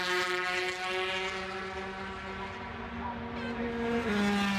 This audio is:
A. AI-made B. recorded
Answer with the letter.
B